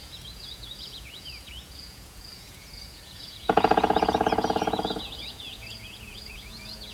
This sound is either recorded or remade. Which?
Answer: remade